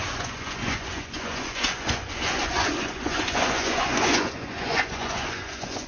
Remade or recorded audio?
remade